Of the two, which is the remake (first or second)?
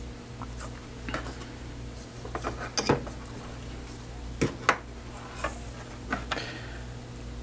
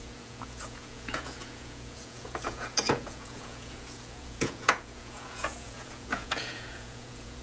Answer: second